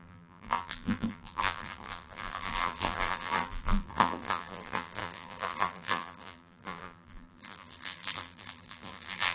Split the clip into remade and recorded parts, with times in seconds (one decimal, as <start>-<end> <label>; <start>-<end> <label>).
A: 0.0-9.3 remade